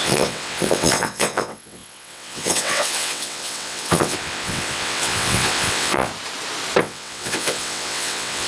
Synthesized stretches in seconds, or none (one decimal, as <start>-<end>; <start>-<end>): 0.0-6.1; 6.8-8.5